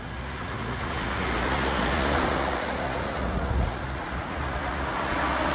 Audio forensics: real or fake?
fake